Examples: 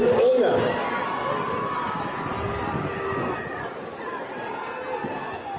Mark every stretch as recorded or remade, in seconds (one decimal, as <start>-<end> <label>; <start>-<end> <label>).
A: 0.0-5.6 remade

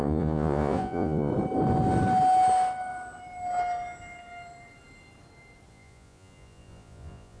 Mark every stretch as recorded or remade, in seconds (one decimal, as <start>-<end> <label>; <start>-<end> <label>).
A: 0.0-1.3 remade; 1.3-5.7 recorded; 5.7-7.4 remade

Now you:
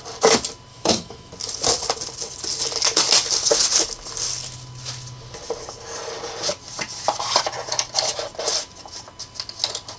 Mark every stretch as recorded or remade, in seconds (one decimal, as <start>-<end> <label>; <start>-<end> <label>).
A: 0.0-0.7 recorded; 0.7-1.3 remade; 1.3-10.0 recorded